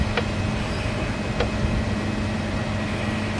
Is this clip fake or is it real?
real